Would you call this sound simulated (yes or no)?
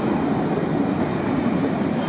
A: no